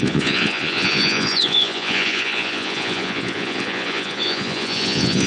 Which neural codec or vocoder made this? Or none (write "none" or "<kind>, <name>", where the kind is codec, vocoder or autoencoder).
vocoder, Vocos